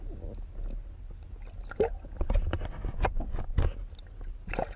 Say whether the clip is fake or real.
real